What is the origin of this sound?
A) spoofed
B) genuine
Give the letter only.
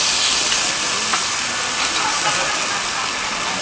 B